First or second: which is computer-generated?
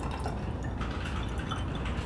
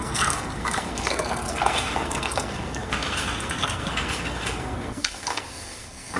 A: second